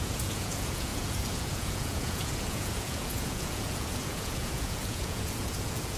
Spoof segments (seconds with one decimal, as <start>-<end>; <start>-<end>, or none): 0.0-6.0